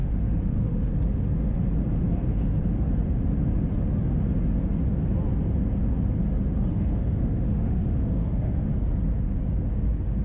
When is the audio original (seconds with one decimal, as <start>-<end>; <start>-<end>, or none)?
0.9-6.7; 8.7-10.2